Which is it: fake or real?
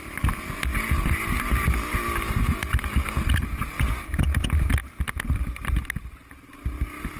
real